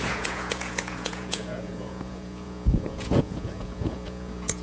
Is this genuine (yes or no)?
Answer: no